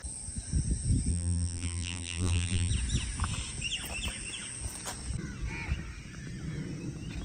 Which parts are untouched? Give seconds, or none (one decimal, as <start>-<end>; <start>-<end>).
0.0-1.1; 2.7-7.2